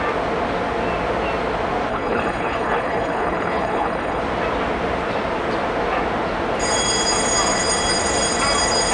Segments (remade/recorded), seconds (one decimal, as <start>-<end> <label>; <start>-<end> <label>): 0.0-1.9 recorded; 1.9-4.2 remade; 4.2-8.9 recorded